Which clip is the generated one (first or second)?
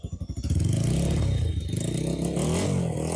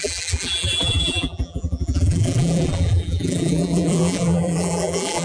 second